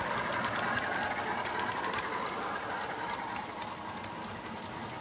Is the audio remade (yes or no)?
no